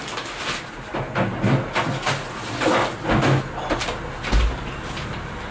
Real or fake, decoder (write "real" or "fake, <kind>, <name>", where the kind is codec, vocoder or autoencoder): real